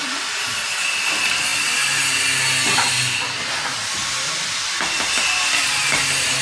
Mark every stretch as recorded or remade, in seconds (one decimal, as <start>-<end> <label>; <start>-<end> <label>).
0.0-6.4 recorded